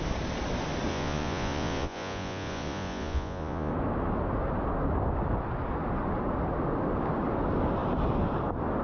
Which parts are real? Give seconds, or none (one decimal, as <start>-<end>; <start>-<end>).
0.0-0.9; 3.7-8.8